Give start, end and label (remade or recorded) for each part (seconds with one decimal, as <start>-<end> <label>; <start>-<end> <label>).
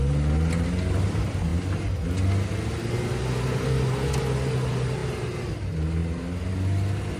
0.0-7.2 recorded